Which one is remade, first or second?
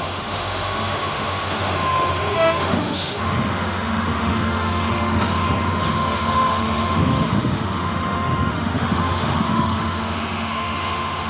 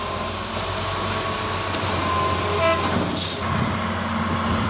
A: first